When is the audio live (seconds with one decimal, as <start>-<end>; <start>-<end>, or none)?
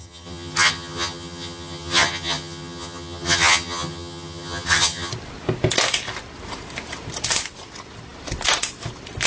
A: 5.1-9.3